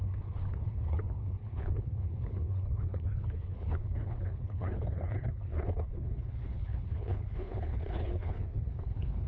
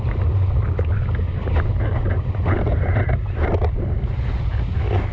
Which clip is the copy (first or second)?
first